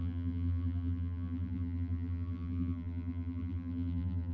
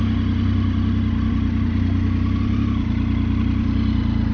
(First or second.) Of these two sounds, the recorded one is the second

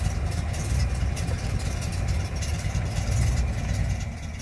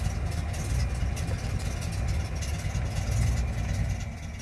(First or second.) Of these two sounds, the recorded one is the second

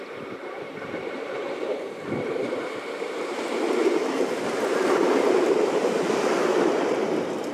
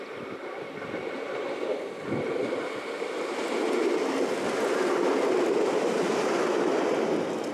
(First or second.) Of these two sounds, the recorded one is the second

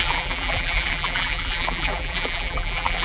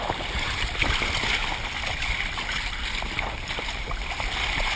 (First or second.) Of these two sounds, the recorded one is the second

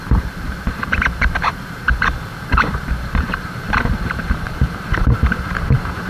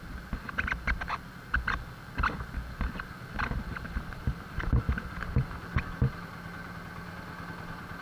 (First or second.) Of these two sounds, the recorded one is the second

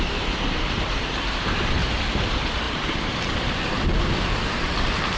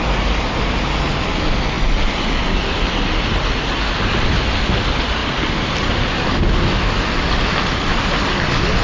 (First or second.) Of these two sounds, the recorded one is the second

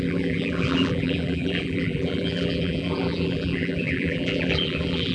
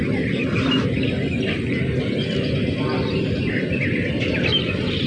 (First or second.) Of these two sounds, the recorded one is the second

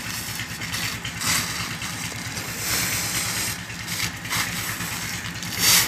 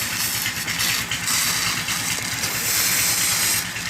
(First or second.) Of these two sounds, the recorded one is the second